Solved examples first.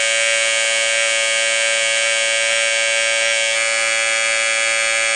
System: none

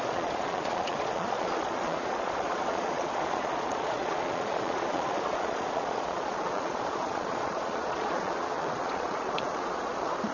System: vocoder, Vocos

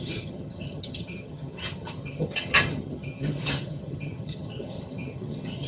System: vocoder, HiFi-GAN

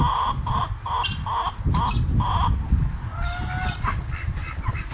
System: none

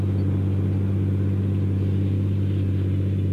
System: none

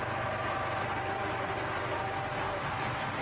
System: none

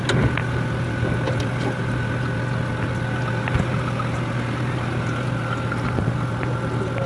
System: none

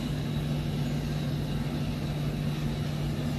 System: none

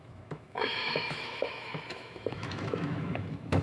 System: autoencoder, DAC-VAE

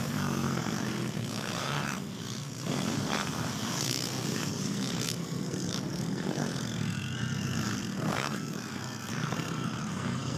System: codec, SNAC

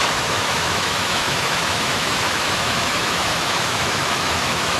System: autoencoder, DAC-VAE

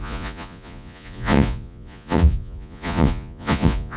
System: vocoder, Vocos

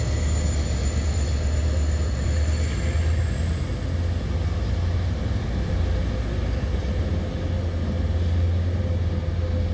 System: none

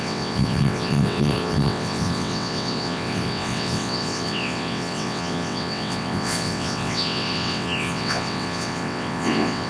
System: vocoder, WaveNeXt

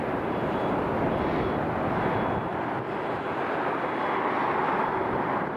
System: none